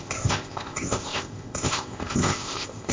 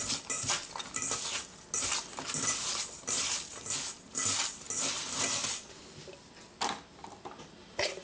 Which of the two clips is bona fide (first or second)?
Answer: second